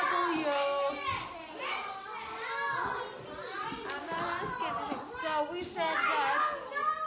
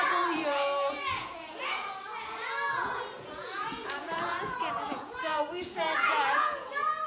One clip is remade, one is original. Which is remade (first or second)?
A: second